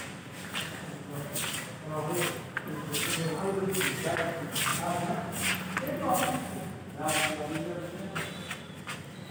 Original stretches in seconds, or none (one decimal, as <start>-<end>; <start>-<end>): 0.0-9.3